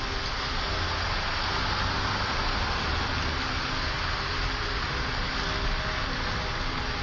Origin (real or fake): real